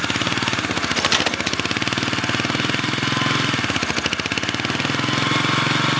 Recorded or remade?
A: recorded